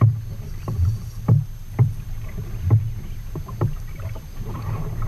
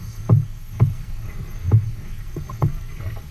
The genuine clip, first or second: first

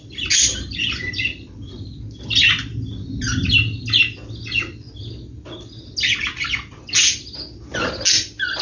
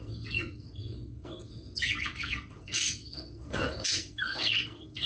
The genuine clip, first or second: first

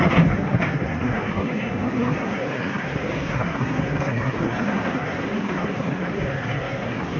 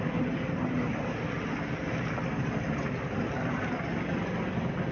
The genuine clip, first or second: second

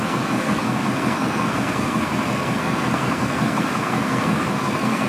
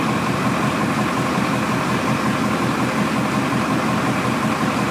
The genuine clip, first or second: second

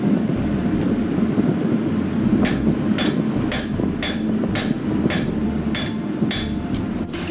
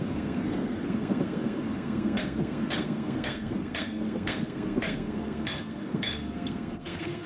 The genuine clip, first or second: first